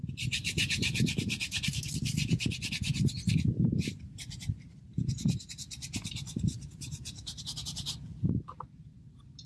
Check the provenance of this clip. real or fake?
fake